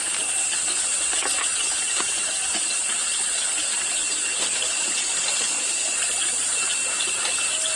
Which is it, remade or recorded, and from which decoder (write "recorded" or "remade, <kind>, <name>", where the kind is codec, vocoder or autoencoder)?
recorded